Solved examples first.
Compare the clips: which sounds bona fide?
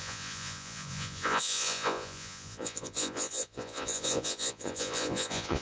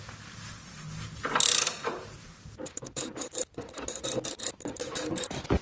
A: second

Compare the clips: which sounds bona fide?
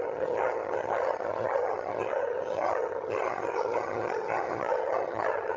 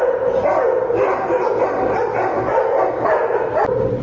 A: second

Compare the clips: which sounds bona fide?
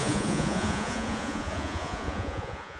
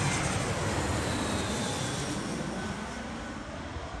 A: second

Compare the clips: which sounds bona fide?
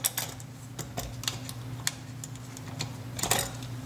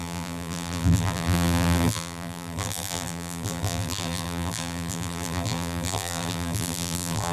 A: first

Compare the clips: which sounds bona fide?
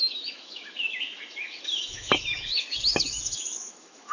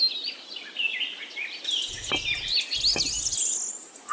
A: second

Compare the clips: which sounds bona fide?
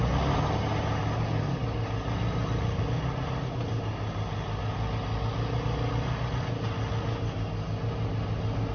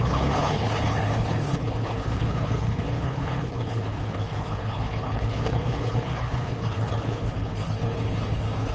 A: first